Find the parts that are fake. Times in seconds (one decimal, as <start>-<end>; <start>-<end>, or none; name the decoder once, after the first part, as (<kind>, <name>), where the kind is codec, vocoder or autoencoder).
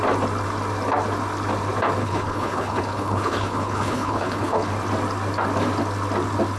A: 2.0-4.7 (codec, HILCodec)